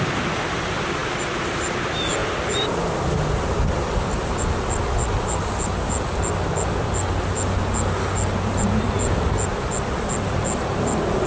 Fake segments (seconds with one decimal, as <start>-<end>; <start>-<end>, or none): none